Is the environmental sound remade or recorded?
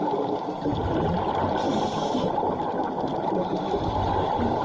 recorded